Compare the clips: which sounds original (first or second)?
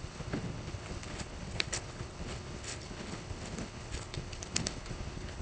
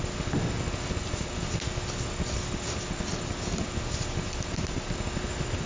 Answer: second